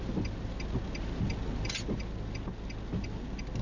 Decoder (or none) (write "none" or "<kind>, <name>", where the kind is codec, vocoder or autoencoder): none